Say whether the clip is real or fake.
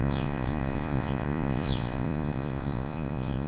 fake